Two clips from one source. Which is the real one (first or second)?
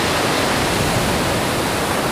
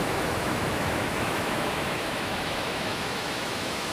first